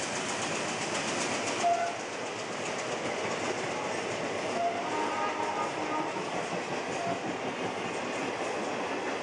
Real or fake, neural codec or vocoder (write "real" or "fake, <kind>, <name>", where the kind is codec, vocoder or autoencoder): real